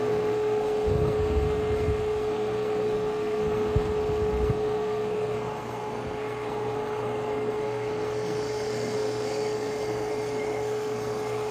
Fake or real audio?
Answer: fake